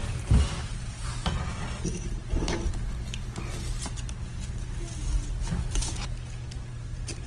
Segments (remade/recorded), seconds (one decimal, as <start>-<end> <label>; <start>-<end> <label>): 0.0-7.3 recorded